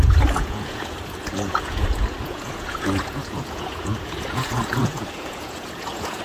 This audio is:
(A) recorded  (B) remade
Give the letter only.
B